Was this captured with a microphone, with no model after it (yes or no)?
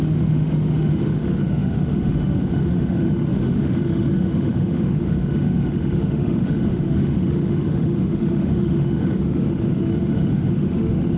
no